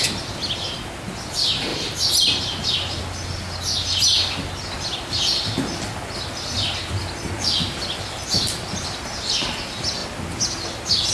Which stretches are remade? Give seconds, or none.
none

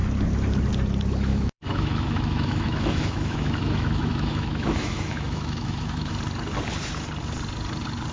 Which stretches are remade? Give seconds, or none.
1.3-6.1 (autoencoder, DAC-VAE)

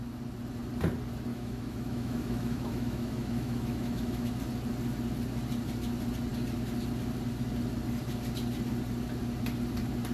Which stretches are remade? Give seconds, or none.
1.3-4.3 (autoencoder, DAC-VAE)

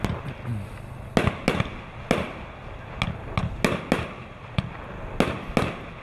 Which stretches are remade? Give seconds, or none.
none

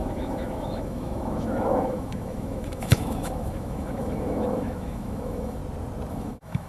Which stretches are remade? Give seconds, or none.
0.0-5.6 (autoencoder, DAC-VAE); 6.1-6.7

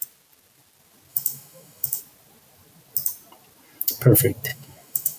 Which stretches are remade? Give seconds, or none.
1.1-2.0 (autoencoder, DAC-VAE); 4.5-5.2

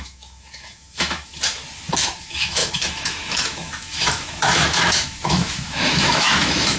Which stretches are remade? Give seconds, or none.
0.0-1.6 (autoencoder, DAC-VAE); 2.2-6.8